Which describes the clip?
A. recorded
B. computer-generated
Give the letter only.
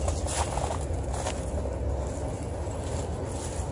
A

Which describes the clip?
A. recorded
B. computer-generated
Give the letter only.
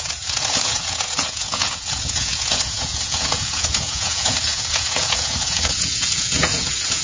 B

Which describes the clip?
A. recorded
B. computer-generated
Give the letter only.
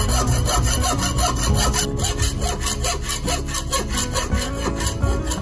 A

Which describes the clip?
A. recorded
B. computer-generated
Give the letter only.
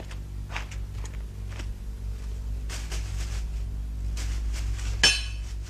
A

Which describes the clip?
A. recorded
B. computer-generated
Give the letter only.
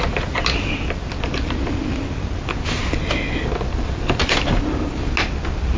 A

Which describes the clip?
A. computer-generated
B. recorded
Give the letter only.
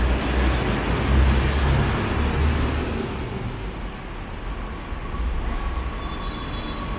B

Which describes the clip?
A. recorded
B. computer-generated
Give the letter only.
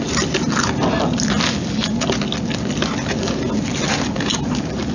A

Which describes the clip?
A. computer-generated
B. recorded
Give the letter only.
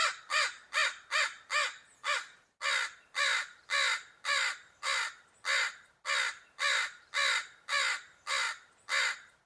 B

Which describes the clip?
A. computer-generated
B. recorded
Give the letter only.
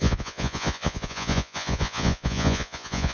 A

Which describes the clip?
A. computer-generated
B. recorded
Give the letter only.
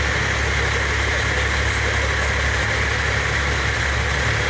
B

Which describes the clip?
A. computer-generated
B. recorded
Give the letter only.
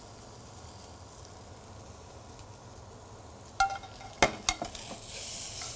B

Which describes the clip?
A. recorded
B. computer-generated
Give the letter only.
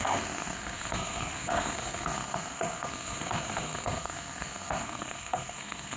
B